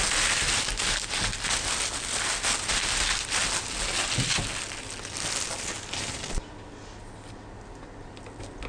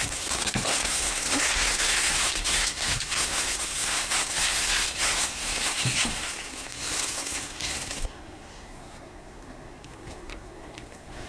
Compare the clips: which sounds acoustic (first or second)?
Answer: first